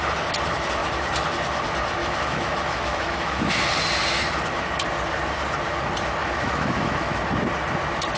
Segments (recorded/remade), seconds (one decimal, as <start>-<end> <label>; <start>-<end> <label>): 0.0-2.0 recorded; 2.0-3.5 remade; 3.5-6.2 recorded; 6.2-7.2 remade; 7.2-8.2 recorded